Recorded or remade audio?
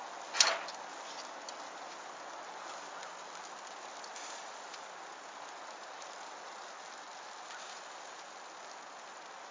recorded